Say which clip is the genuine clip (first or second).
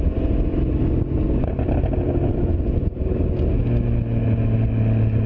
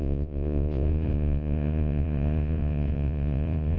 first